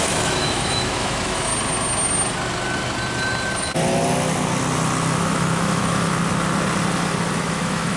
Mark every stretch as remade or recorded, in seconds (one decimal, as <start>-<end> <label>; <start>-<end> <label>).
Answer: 0.0-1.5 remade; 1.5-5.2 recorded; 5.2-6.2 remade; 6.2-7.3 recorded; 7.3-8.0 remade